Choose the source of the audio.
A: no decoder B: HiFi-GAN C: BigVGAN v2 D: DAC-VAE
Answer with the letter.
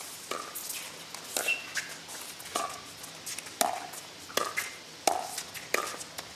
A